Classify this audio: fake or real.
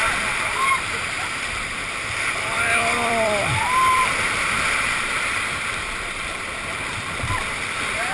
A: fake